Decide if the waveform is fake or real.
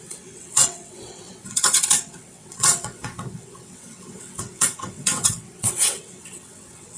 fake